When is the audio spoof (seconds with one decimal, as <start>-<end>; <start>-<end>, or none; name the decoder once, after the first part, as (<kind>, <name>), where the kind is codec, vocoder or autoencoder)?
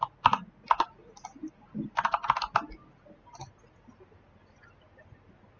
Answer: none